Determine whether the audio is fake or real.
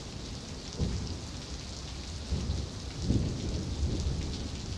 real